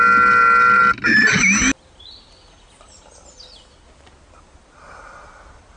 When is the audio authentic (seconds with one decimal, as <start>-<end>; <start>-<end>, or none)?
0.0-5.8